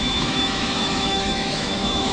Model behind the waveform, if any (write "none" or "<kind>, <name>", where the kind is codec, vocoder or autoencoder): autoencoder, DAC-VAE